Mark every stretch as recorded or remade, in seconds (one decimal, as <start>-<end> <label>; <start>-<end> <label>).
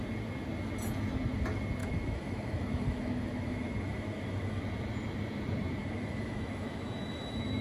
0.0-1.8 recorded; 1.8-4.6 remade; 4.6-5.8 recorded; 5.8-7.6 remade